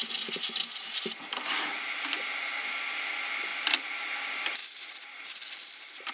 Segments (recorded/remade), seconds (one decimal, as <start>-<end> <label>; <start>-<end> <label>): 0.0-1.1 recorded; 1.1-2.9 remade; 2.9-3.5 recorded; 3.5-4.0 remade; 4.0-4.6 recorded; 4.6-6.1 remade